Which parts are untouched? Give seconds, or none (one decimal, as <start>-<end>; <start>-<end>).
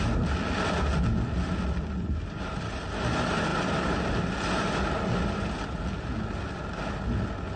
0.0-7.6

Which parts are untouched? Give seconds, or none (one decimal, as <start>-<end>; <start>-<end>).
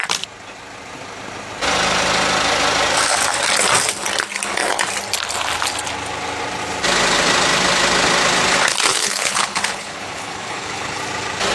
0.0-8.9; 11.0-11.5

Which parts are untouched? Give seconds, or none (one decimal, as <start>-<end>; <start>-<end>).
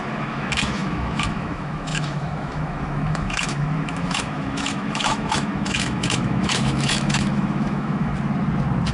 8.1-8.9